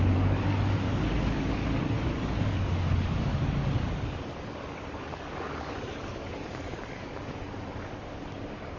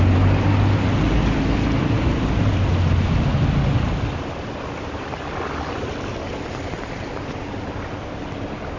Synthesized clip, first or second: first